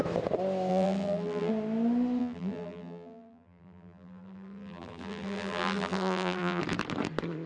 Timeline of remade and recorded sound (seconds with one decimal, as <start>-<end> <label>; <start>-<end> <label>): 0.0-0.7 recorded; 0.7-1.5 remade; 1.5-2.2 recorded; 2.2-6.6 remade; 6.6-7.5 recorded